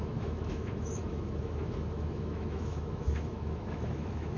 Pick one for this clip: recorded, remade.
remade